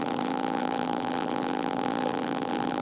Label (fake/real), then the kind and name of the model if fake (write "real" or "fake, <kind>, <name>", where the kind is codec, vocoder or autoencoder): fake, vocoder, BigVGAN v2